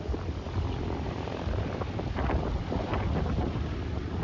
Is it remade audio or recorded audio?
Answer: remade